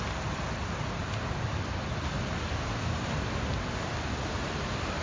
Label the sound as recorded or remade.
recorded